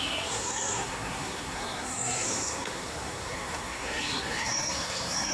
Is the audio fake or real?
fake